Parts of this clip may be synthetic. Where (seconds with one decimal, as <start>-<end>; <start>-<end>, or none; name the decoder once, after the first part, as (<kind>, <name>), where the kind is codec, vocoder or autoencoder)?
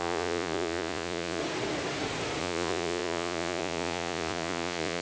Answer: 0.0-1.4 (vocoder, Vocos); 2.4-5.0